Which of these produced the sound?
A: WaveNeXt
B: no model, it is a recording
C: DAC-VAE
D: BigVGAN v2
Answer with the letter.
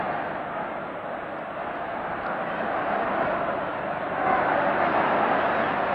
B